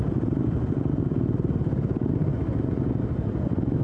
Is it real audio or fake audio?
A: real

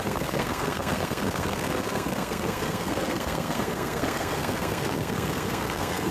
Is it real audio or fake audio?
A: fake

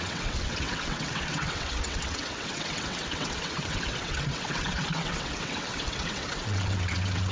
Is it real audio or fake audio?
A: fake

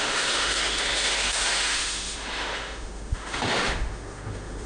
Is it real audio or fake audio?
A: fake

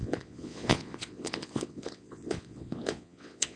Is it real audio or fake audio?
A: fake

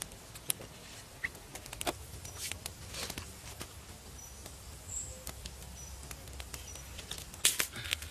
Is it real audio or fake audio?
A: real